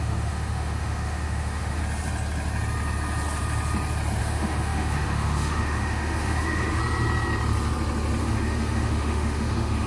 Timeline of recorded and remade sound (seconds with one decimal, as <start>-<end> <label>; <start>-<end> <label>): 0.0-1.8 remade; 1.8-4.2 recorded; 4.2-6.8 remade; 6.8-8.2 recorded; 8.2-9.9 remade

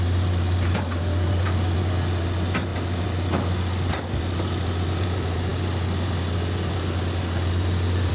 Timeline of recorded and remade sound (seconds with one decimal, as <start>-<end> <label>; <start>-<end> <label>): 0.0-8.1 recorded

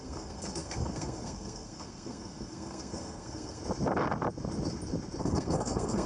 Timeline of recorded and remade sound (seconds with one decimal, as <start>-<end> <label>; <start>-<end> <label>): 0.0-3.6 remade; 3.6-5.2 recorded; 5.2-6.1 remade

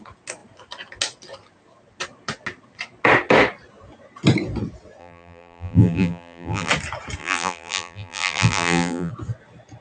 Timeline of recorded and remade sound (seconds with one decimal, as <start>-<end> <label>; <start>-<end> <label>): 0.0-5.0 recorded; 5.0-6.7 remade; 6.7-7.2 recorded; 7.2-9.1 remade; 9.1-9.8 recorded

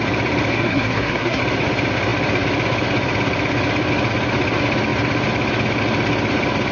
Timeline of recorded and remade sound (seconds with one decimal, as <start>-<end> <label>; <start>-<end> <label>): 0.0-0.5 recorded; 0.5-1.4 remade; 1.4-6.7 recorded

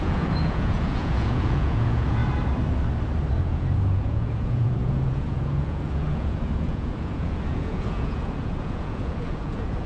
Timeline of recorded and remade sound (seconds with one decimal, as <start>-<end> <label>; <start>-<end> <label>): 0.0-2.2 remade; 2.2-3.3 recorded; 3.3-9.9 remade

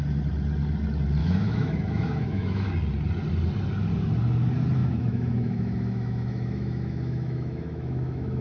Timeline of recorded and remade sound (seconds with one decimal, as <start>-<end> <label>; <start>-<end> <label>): 0.0-1.2 recorded; 1.2-2.7 remade; 2.7-4.8 recorded; 4.8-8.4 remade